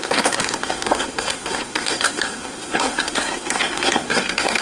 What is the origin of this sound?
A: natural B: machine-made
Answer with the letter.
B